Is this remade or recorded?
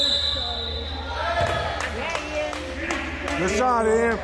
recorded